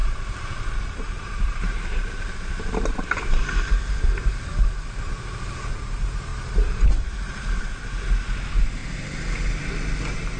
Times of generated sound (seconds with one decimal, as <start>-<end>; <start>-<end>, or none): 0.0-5.1; 6.3-7.6; 8.8-10.0